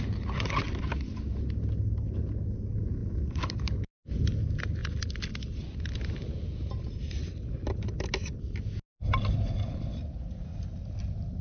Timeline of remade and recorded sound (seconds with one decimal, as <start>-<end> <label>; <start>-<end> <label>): 0.0-3.0 recorded; 3.0-4.2 remade; 4.2-4.8 recorded; 4.8-5.3 remade; 5.3-11.4 recorded

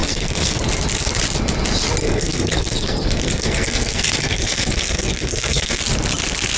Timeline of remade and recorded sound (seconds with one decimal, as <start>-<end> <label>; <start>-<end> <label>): 0.0-0.6 remade; 0.6-2.0 recorded; 2.0-5.8 remade; 5.8-6.6 recorded

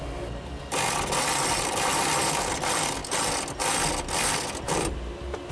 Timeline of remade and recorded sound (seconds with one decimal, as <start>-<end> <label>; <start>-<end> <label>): 0.0-5.5 recorded

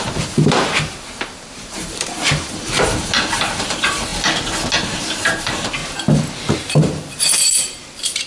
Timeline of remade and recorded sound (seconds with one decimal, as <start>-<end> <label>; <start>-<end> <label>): 0.0-4.1 remade; 4.1-5.0 recorded; 5.0-5.8 remade; 5.8-6.6 recorded; 6.6-8.3 remade

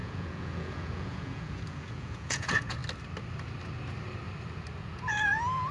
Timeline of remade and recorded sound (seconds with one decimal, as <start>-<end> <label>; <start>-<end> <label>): 0.0-2.8 remade; 2.8-4.8 recorded; 4.8-5.7 remade

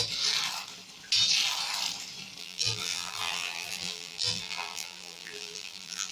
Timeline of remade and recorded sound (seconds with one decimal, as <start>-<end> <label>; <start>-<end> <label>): 0.0-2.4 recorded; 2.4-6.1 remade